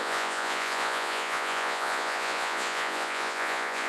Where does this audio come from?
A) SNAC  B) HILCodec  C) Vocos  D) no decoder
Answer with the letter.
C